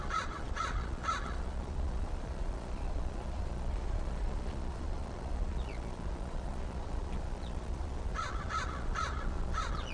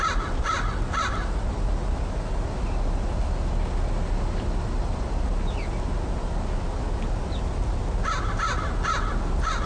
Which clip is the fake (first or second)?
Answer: first